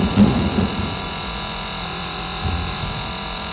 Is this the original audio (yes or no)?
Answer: no